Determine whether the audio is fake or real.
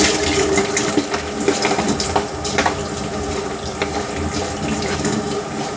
real